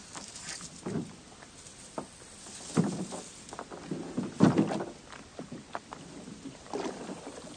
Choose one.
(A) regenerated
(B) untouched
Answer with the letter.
B